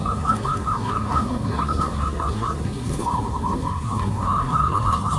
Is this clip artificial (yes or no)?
yes